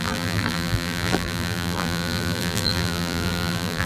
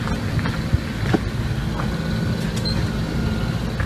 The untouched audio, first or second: second